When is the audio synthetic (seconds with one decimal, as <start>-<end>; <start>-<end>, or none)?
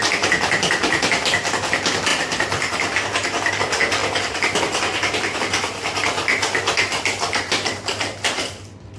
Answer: none